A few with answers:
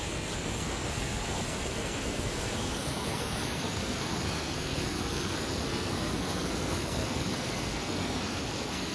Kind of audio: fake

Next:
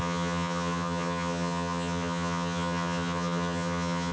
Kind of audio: fake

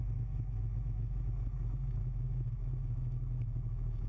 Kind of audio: fake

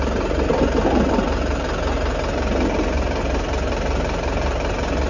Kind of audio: real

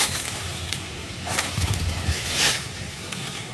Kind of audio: fake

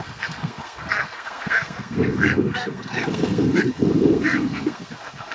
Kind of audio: fake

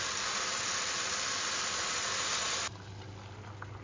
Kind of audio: real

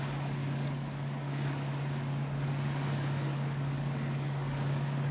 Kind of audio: fake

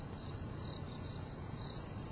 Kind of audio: real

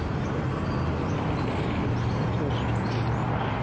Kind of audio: real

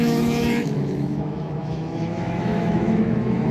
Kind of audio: fake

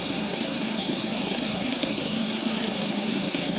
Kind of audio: fake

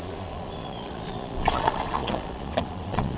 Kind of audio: fake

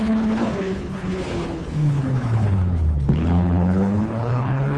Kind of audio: fake